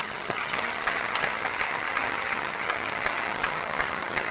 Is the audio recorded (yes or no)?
no